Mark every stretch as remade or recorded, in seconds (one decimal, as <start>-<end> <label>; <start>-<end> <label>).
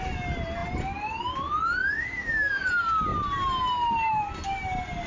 0.0-1.8 recorded; 1.8-2.7 remade; 2.7-5.1 recorded